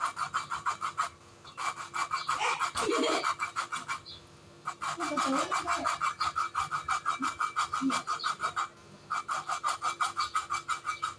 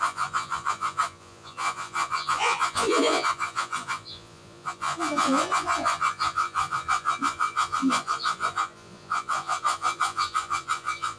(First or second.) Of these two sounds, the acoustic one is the first